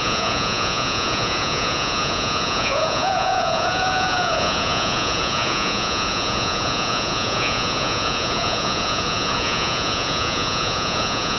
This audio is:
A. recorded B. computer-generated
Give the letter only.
B